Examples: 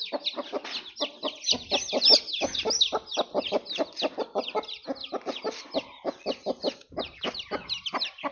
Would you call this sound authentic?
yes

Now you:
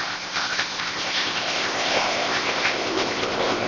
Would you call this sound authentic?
no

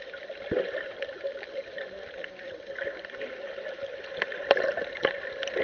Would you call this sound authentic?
yes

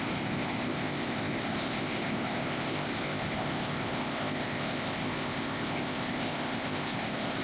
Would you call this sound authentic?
no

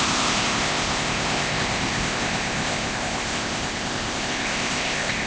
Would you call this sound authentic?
no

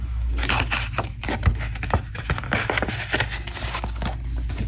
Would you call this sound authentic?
yes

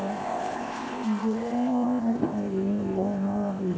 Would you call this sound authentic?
no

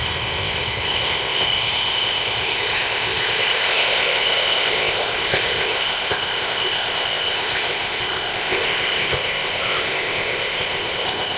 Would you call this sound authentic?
no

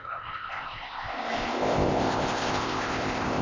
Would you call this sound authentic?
no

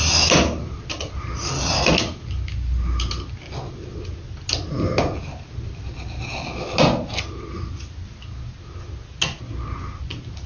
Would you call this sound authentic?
yes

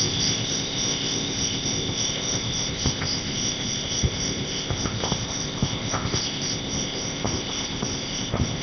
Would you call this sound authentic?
no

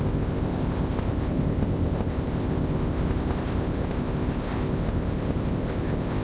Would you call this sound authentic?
no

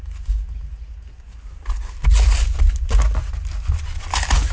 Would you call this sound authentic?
yes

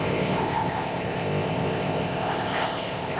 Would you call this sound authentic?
no